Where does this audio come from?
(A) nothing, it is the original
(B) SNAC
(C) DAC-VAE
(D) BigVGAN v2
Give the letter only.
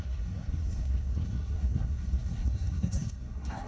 B